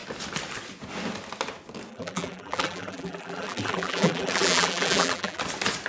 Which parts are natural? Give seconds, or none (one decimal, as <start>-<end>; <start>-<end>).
0.0-1.9; 5.4-5.9